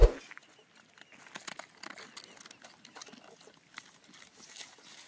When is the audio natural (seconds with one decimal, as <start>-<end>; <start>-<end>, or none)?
0.0-5.1